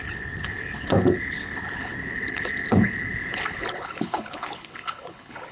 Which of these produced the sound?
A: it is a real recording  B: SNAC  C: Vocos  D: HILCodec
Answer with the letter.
D